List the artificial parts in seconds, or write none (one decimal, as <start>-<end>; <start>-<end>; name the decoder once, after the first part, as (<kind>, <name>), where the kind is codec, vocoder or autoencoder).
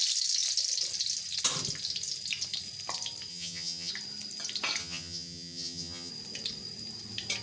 3.3-3.9 (vocoder, HiFi-GAN); 4.8-6.1